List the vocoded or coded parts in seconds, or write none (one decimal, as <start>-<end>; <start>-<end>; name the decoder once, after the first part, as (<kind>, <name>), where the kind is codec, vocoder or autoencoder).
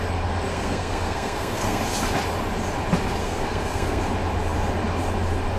0.5-1.8 (codec, SNAC); 3.2-4.0